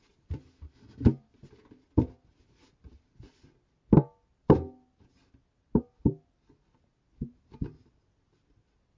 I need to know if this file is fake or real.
real